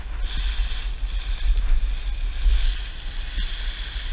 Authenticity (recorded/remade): recorded